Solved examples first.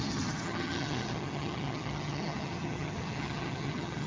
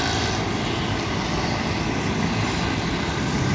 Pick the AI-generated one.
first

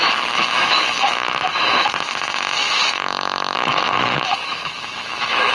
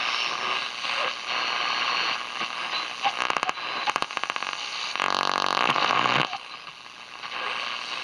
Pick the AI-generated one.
first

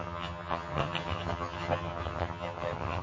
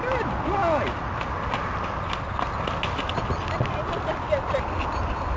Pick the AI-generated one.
first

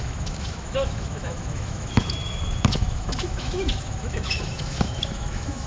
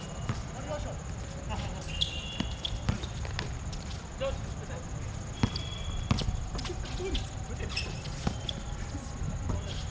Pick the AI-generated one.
first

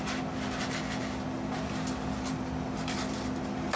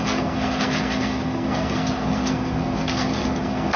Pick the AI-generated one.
second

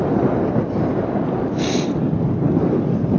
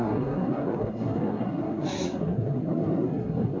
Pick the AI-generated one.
second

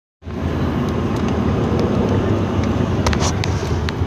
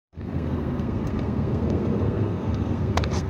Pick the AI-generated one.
second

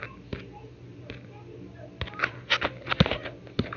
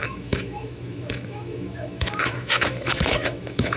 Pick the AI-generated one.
second